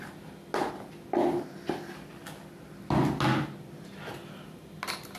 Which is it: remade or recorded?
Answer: recorded